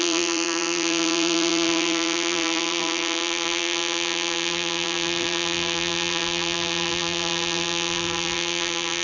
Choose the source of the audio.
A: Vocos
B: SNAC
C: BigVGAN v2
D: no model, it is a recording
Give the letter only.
C